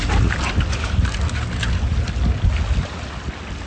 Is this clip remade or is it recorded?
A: recorded